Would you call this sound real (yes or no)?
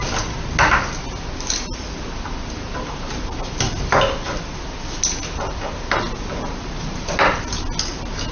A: yes